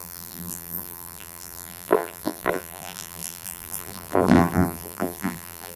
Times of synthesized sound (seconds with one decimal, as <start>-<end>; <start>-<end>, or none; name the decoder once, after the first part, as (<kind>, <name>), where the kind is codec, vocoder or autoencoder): 0.0-5.8 (vocoder, BigVGAN v2)